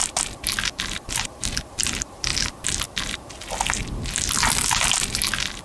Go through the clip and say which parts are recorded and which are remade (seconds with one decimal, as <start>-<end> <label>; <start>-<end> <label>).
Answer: 0.0-5.6 recorded